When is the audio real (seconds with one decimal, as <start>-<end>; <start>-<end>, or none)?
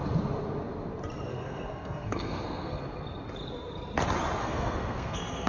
0.0-1.3; 2.8-4.4